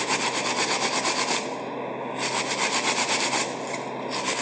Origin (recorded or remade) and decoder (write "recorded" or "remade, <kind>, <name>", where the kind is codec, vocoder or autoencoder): recorded